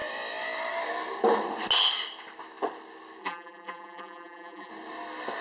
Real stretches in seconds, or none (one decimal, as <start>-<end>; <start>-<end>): 0.0-3.2; 4.7-5.4